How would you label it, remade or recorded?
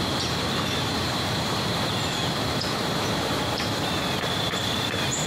remade